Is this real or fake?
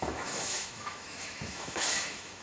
fake